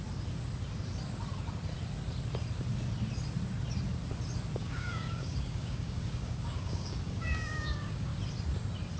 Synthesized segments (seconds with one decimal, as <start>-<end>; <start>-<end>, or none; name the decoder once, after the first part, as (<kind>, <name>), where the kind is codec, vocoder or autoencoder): 4.6-8.1 (codec, DAC)